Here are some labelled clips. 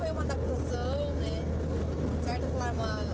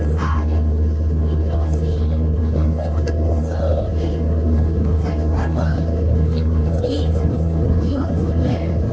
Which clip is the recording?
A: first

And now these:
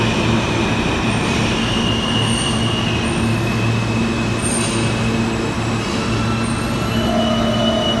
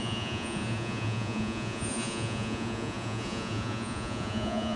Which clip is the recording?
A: first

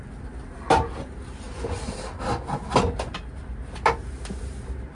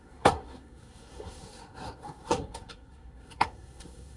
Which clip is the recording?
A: first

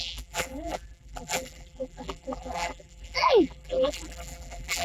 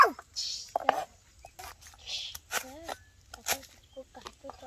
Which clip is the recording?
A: second